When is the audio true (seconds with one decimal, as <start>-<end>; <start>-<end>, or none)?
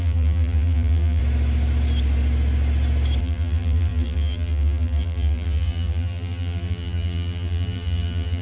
1.2-3.2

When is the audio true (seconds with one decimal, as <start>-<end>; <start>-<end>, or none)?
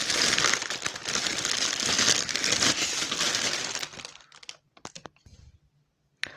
0.0-6.4